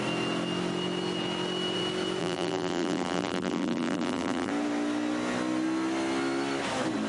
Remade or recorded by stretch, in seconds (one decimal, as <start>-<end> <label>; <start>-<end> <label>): 0.0-2.2 recorded; 2.2-4.5 remade; 4.5-7.1 recorded